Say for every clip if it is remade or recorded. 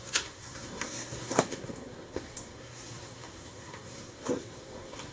remade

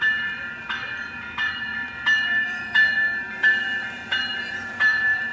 remade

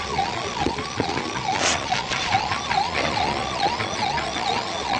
remade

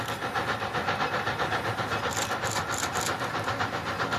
recorded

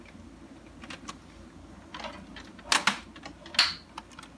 recorded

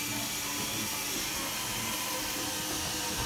recorded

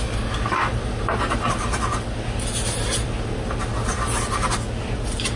recorded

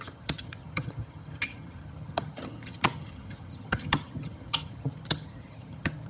remade